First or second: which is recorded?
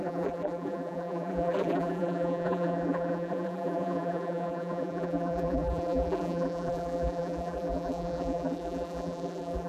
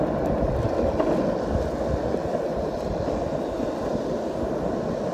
second